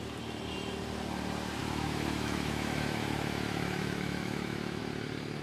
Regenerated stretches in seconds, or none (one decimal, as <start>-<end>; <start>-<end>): 1.6-4.8